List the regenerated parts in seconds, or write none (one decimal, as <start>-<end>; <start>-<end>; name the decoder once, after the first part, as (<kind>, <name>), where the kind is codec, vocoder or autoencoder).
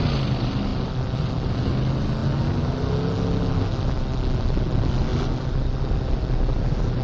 none